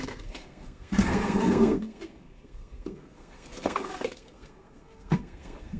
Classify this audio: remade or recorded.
remade